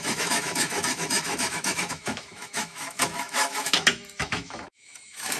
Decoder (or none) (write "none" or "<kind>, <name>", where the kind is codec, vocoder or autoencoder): autoencoder, DAC-VAE